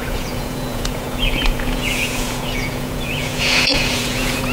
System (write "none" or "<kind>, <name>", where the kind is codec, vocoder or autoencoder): vocoder, Vocos